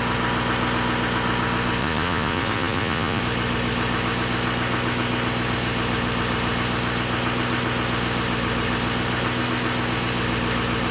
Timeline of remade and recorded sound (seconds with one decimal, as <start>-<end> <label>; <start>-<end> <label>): 0.0-1.8 recorded; 1.8-3.2 remade; 3.2-10.9 recorded